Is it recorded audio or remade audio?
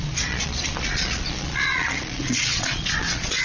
remade